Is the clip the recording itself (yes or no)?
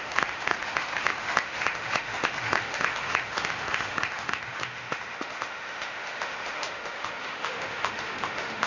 no